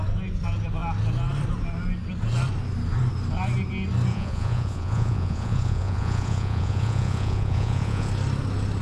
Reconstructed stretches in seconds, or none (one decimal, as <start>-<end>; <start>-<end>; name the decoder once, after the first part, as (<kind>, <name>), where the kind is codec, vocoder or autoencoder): 4.1-8.1 (vocoder, Vocos)